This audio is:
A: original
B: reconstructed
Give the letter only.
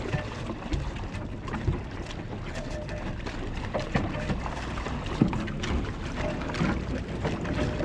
A